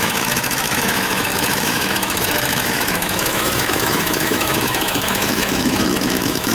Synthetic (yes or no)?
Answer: yes